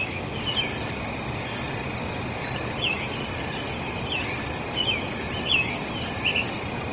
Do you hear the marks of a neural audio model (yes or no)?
no